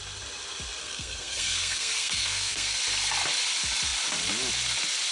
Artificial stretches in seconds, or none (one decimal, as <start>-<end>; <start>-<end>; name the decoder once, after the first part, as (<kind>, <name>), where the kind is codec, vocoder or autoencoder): 0.8-2.8 (codec, SNAC)